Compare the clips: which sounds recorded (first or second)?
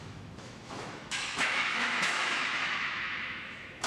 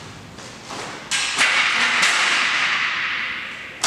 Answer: second